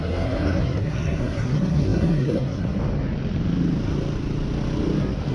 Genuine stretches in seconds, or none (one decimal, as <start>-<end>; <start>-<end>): 2.8-5.3